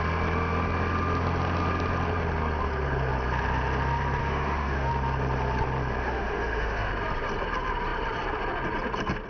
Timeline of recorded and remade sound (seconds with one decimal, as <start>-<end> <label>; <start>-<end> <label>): 0.0-4.2 recorded; 4.2-4.9 remade; 4.9-6.0 recorded; 6.0-6.9 remade; 6.9-9.3 recorded